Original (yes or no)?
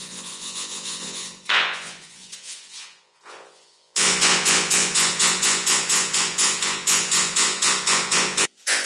no